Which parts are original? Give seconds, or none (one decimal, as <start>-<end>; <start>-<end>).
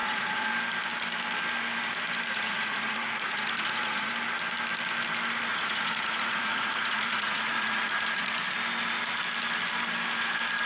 0.5-2.3; 4.1-5.5; 8.4-10.7